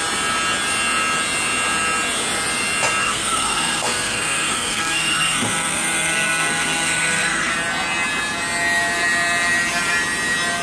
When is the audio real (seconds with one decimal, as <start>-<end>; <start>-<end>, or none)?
0.0-3.0; 7.5-10.6